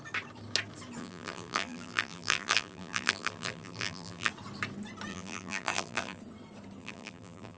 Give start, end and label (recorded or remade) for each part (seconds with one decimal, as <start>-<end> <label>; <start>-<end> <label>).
0.0-1.0 recorded; 1.0-4.3 remade; 4.3-5.1 recorded; 5.1-6.2 remade; 6.2-6.8 recorded; 6.8-7.6 remade